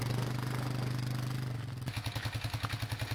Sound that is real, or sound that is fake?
real